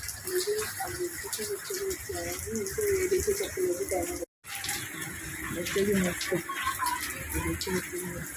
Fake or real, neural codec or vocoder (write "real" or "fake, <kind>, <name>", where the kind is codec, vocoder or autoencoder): real